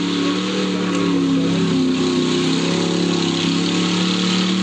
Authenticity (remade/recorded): recorded